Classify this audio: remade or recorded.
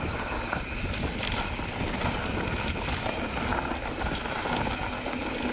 recorded